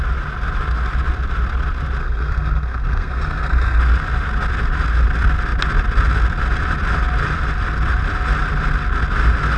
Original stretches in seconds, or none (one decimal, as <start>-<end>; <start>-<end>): 0.0-2.0; 3.8-9.6